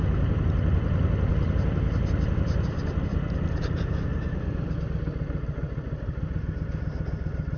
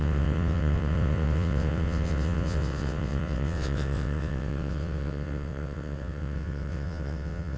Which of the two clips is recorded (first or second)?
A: first